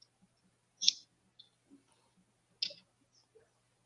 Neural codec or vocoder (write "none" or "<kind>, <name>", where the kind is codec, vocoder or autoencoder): none